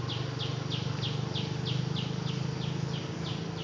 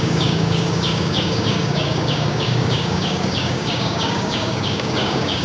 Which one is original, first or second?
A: first